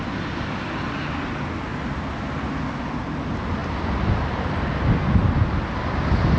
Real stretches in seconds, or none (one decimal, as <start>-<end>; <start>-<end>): 0.0-6.4